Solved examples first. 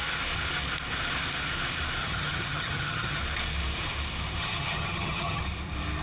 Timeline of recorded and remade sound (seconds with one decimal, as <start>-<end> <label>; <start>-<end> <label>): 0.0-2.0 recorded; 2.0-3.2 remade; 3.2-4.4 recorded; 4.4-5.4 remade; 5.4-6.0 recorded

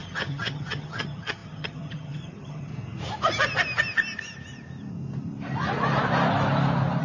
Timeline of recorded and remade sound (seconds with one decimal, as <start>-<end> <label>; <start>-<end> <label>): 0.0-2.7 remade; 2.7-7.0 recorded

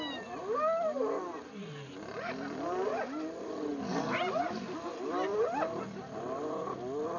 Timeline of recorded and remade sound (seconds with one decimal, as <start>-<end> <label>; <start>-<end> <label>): 0.0-7.2 recorded

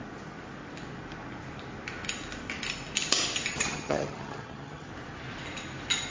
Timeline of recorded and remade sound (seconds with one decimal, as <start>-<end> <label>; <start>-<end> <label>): 0.0-3.5 recorded; 3.5-4.9 remade; 4.9-6.1 recorded

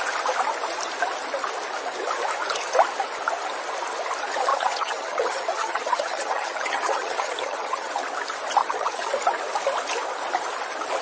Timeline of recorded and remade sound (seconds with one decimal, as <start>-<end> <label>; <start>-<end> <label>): 0.0-4.5 recorded; 4.5-7.9 remade; 7.9-8.6 recorded; 8.6-9.1 remade; 9.1-11.0 recorded